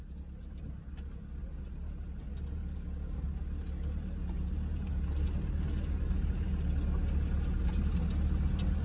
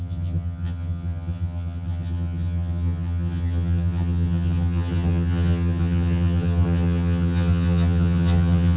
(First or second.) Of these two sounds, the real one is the first